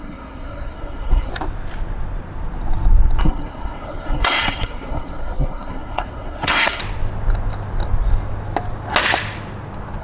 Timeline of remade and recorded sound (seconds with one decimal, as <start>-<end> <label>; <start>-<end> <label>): 0.0-1.3 remade; 1.3-3.2 recorded; 3.2-6.8 remade; 6.8-10.0 recorded